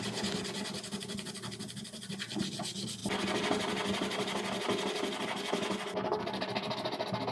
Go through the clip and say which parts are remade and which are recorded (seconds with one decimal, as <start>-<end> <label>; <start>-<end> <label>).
0.0-7.3 recorded